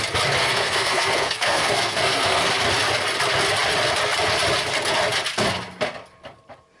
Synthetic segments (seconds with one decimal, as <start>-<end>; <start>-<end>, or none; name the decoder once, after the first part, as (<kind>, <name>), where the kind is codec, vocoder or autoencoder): 0.4-2.5 (codec, SNAC)